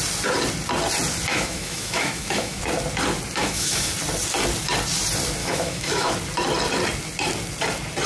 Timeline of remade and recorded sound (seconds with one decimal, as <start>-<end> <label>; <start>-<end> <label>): 0.0-1.3 recorded; 1.3-2.6 remade; 2.6-3.4 recorded; 3.4-3.9 remade; 3.9-5.4 recorded; 5.4-6.1 remade; 6.1-8.1 recorded